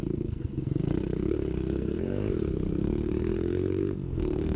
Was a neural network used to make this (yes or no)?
yes